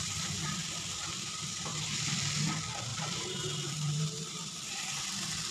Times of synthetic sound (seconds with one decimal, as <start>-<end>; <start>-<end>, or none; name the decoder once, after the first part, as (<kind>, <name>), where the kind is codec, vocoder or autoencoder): 2.9-5.0 (vocoder, BigVGAN v2)